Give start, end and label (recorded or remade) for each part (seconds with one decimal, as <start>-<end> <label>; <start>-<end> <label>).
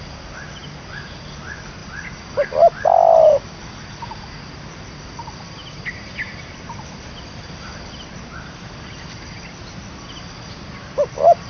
0.0-11.5 recorded